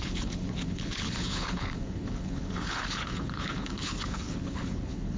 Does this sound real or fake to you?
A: fake